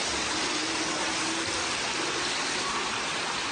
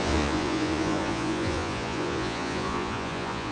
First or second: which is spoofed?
second